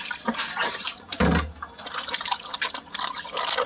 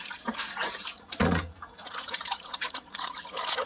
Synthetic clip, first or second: second